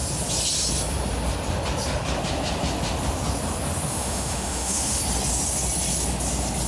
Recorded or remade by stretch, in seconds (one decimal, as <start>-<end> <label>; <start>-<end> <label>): 0.0-3.9 recorded; 3.9-5.0 remade; 5.0-6.7 recorded